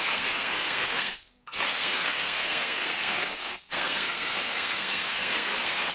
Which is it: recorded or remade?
remade